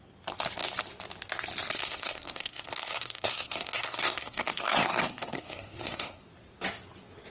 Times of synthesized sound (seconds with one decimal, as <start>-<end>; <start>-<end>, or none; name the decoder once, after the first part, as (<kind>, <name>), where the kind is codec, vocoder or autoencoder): 1.8-6.2 (codec, SNAC)